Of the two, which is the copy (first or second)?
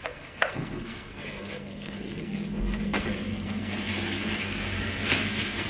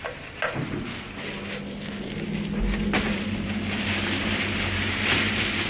first